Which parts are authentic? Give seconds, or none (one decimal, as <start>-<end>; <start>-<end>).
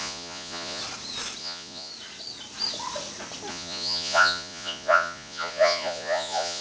0.8-1.4; 1.9-3.5